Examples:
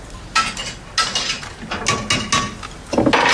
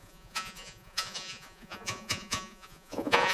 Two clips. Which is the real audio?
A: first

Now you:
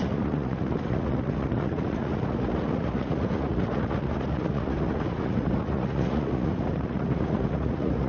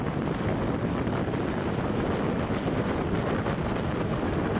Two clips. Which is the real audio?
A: second